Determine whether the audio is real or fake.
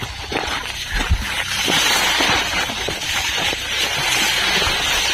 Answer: fake